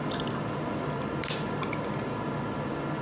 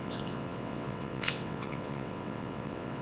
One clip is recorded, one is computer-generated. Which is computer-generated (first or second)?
second